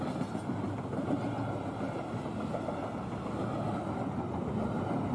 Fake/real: real